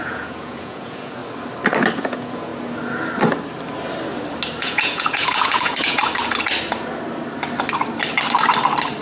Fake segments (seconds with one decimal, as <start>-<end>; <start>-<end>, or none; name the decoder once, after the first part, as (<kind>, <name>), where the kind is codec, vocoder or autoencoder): 0.0-1.2 (vocoder, Vocos); 2.0-2.5; 4.6-6.0